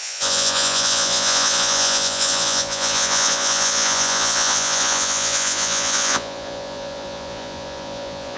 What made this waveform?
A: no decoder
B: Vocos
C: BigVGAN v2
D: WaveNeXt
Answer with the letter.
B